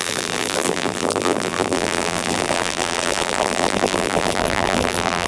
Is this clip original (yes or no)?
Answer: no